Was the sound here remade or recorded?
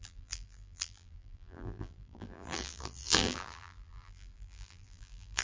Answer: remade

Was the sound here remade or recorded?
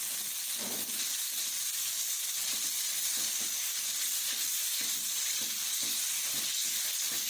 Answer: recorded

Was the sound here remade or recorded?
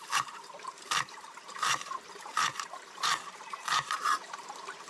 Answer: remade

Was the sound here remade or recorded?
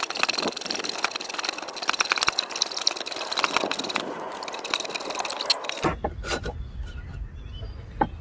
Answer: recorded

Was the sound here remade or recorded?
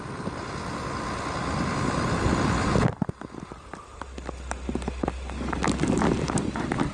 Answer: recorded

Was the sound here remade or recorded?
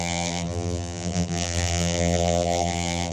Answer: remade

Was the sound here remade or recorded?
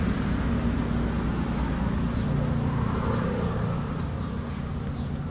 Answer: recorded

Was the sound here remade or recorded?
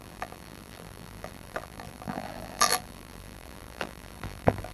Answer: remade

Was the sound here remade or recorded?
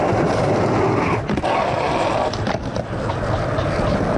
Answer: recorded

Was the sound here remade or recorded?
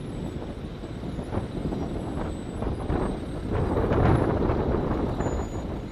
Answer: recorded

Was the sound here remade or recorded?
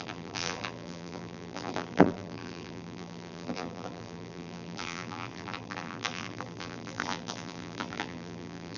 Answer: remade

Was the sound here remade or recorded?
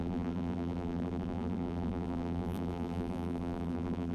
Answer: remade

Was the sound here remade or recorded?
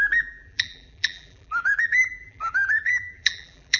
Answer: remade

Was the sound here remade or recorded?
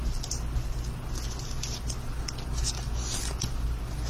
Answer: recorded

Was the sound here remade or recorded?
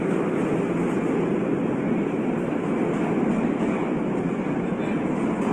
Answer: recorded